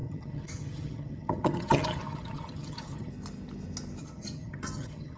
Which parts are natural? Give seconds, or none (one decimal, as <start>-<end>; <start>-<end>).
3.1-4.0